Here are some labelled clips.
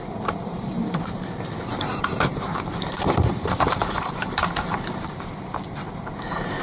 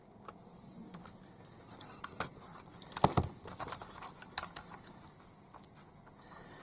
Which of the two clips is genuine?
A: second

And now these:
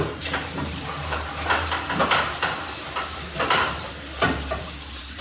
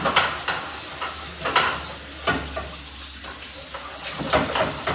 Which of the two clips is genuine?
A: second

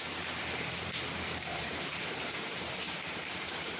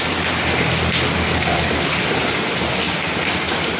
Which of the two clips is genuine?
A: second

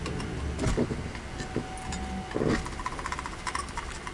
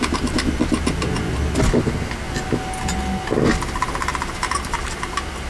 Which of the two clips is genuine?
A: second